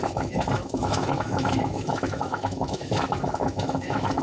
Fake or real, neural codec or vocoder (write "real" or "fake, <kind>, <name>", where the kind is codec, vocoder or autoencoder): fake, autoencoder, DAC-VAE